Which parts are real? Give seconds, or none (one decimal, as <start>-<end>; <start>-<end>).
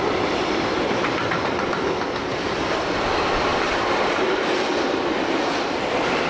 0.0-6.3